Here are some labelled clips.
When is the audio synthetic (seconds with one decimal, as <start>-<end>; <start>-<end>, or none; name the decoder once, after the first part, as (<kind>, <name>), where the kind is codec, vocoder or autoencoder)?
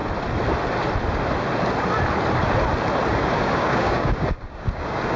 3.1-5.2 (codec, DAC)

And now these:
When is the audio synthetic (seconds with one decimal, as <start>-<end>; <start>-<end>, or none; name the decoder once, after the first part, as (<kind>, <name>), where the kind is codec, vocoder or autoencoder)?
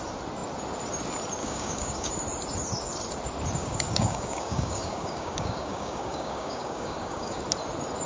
1.4-2.1 (codec, DAC); 3.6-7.4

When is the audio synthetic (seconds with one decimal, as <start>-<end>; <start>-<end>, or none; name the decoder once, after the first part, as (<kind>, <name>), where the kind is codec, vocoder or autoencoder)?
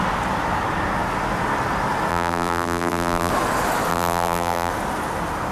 2.1-3.3 (vocoder, BigVGAN v2); 3.9-4.7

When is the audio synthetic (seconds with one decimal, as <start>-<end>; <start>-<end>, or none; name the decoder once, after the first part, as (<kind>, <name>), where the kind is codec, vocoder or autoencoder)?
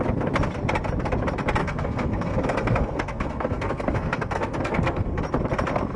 1.6-5.2 (codec, SNAC)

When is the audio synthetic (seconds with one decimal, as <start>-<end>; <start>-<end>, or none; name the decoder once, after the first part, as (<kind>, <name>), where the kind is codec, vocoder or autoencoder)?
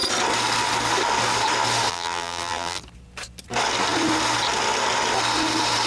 1.9-2.8 (vocoder, BigVGAN v2)